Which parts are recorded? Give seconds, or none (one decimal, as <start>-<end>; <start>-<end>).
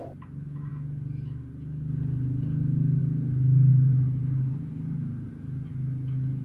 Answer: 0.0-3.7; 5.3-6.4